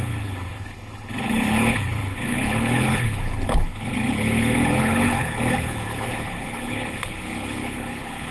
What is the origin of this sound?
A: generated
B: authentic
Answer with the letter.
A